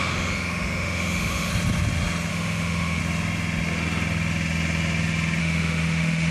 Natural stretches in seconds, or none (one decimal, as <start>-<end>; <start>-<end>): 1.5-2.3; 3.0-5.4